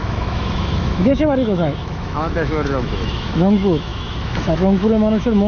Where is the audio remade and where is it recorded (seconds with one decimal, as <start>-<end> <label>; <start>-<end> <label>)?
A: 0.0-5.5 remade